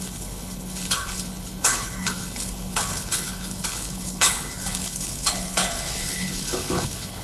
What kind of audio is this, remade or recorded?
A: remade